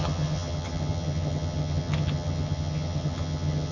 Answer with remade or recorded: remade